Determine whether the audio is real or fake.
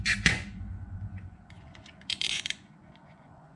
fake